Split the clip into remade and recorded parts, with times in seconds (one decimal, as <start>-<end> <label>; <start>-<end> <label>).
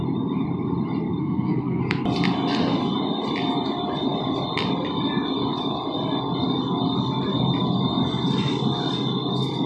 0.0-1.2 recorded; 1.2-1.8 remade; 1.8-9.7 recorded